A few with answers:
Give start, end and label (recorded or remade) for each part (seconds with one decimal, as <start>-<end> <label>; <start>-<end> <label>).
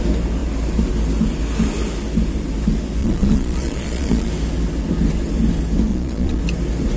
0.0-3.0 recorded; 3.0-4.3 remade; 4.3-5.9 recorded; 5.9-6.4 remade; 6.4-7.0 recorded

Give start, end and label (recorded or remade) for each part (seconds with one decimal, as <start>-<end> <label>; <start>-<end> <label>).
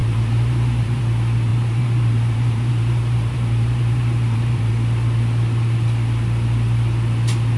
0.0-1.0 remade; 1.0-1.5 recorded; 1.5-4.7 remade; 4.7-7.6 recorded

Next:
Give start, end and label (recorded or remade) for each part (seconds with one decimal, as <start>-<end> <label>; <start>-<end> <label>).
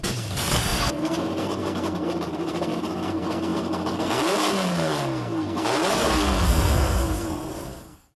0.0-8.2 remade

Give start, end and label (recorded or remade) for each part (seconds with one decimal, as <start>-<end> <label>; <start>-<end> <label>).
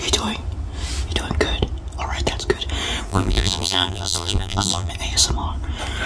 0.0-3.1 recorded; 3.1-4.9 remade; 4.9-6.1 recorded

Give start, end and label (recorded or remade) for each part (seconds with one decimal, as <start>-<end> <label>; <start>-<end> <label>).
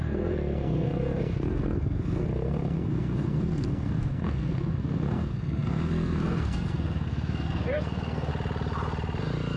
0.0-8.3 remade; 8.3-9.6 recorded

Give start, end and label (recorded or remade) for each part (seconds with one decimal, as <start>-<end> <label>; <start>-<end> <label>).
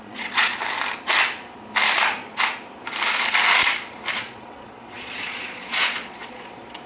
0.0-0.5 remade; 0.5-4.1 recorded; 4.1-6.9 remade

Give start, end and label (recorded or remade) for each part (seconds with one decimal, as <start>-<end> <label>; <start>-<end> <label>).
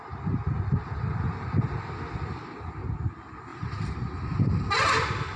0.0-3.5 recorded; 3.5-5.4 remade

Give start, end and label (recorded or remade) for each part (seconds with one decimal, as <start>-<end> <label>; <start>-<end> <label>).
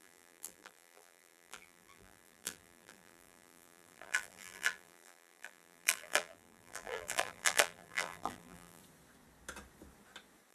0.0-8.8 remade; 8.8-10.5 recorded